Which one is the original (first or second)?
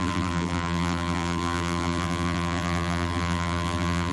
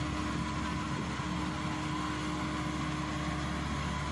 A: second